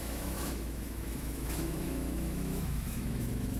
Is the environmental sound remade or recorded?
remade